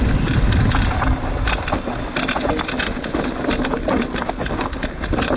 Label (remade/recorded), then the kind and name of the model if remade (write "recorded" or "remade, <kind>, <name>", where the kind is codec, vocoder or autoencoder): recorded